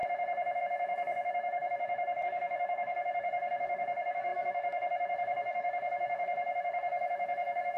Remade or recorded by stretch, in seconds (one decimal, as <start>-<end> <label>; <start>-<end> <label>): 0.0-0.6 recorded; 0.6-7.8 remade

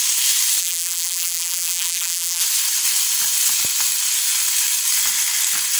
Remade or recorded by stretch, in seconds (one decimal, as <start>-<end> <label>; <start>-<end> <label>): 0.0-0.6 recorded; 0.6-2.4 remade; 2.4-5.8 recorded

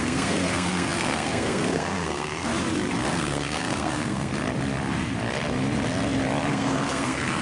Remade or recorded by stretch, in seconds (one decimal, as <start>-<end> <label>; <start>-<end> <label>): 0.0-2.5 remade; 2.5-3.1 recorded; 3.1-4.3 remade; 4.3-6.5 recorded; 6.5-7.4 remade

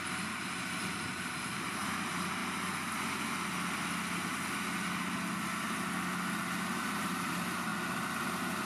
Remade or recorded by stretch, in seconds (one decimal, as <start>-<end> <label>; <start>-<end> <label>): 0.0-2.4 remade; 2.4-6.8 recorded; 6.8-7.7 remade; 7.7-8.7 recorded

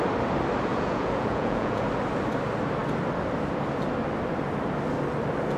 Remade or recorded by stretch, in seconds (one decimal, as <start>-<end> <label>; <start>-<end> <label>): 0.0-0.7 recorded; 0.7-1.8 remade; 1.8-5.6 recorded

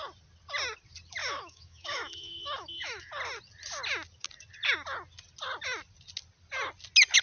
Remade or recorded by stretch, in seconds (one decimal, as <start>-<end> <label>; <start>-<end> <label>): 0.0-1.2 recorded; 1.2-3.1 remade; 3.1-7.2 recorded

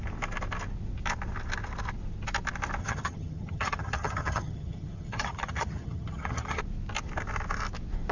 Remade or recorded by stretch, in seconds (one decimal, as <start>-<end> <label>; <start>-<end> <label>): 0.0-2.8 recorded; 2.8-6.6 remade; 6.6-8.1 recorded